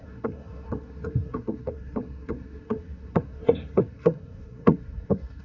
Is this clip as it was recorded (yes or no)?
no